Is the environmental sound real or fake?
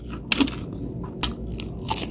real